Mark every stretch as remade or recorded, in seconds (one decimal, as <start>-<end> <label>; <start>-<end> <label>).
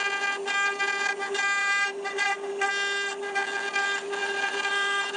0.0-1.6 recorded; 1.6-2.5 remade; 2.5-4.2 recorded; 4.2-5.2 remade